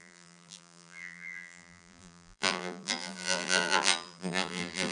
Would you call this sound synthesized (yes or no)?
yes